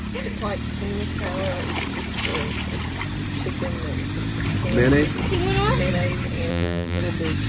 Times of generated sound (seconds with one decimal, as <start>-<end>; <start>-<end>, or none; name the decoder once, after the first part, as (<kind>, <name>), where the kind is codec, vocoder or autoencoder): 6.5-7.0 (vocoder, BigVGAN v2)